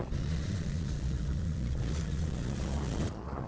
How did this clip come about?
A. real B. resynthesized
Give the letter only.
B